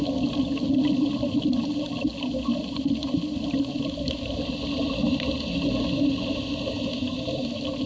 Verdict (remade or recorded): recorded